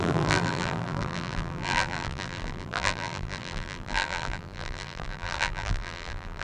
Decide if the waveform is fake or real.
fake